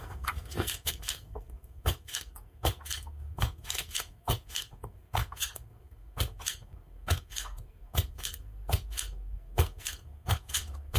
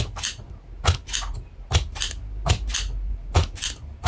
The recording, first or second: second